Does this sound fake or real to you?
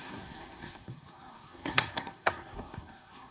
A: fake